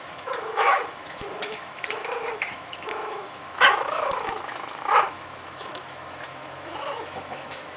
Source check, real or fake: fake